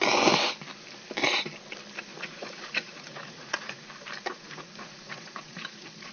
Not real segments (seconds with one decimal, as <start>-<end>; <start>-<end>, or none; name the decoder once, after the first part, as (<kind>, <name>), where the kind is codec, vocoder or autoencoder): 2.1-3.9 (vocoder, Vocos); 4.3-6.1